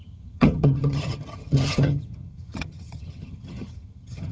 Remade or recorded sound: remade